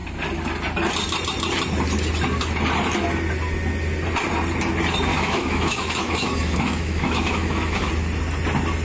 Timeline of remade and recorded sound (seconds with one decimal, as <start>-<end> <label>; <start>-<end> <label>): 0.0-5.1 recorded; 5.1-7.9 remade; 7.9-8.8 recorded